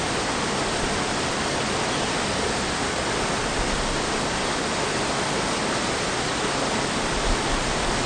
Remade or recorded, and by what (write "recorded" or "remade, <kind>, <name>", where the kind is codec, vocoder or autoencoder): recorded